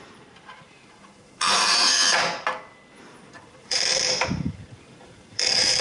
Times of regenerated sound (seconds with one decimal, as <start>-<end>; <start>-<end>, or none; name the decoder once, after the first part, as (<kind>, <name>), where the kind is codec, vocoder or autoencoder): 0.0-2.0 (vocoder, BigVGAN v2); 3.6-5.8